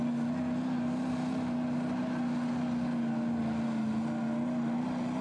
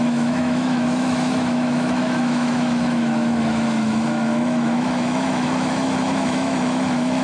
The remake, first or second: second